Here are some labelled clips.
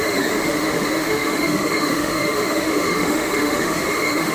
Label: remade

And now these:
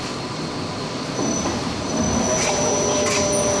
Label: recorded